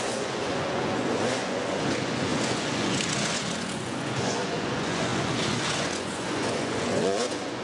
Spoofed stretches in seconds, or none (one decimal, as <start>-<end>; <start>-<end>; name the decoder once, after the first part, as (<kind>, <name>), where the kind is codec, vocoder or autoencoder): 0.0-7.6 (vocoder, Vocos)